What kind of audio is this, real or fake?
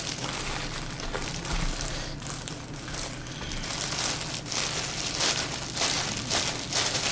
real